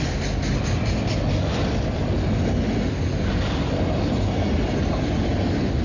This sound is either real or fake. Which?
real